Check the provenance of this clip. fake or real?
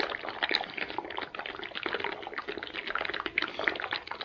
real